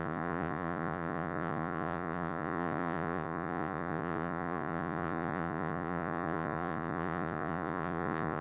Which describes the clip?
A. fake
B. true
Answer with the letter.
A